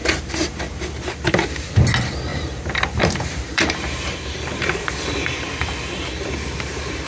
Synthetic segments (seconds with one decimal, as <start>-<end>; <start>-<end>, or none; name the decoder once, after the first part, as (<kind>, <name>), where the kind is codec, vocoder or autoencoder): 0.0-1.7 (vocoder, BigVGAN v2); 2.3-5.5